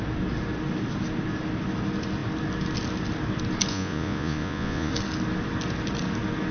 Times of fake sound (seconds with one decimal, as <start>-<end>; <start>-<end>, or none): 3.7-4.9

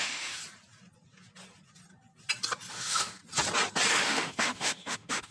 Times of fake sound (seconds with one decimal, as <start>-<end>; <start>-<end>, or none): 0.0-0.4; 2.7-3.2; 3.9-5.3

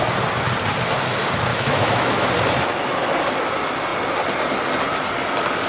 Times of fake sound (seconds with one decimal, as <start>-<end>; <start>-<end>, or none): 1.5-2.3

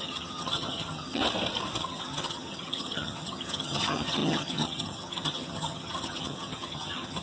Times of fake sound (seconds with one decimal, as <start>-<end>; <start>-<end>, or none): 0.0-1.2; 1.8-7.2

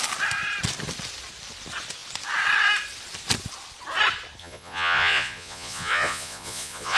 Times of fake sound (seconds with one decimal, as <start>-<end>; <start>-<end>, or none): 4.4-7.0

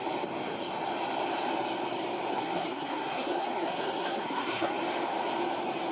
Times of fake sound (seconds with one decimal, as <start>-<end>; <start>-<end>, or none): 2.3-4.7

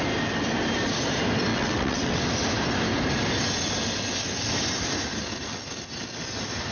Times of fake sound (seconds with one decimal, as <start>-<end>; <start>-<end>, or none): 1.5-2.2

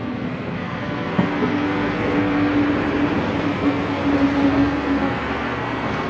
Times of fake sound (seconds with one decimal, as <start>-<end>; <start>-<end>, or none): 0.0-2.5; 3.4-4.0; 4.5-6.1